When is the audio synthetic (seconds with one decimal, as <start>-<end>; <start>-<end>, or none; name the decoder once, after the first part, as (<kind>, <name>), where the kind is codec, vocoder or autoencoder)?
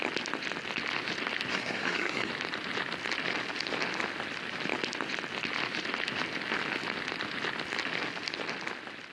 1.5-2.3 (codec, SNAC)